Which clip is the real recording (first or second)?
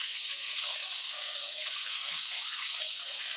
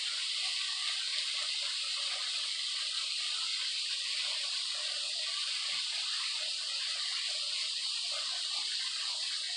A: second